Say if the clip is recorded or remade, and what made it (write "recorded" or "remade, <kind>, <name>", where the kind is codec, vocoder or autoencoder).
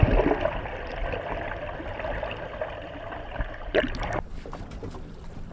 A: recorded